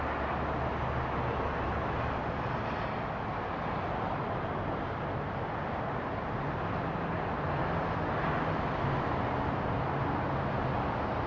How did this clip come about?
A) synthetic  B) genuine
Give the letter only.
B